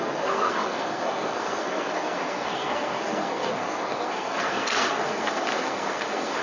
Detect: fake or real fake